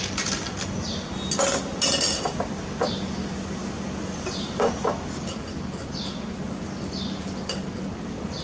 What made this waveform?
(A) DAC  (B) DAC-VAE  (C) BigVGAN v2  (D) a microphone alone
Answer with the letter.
D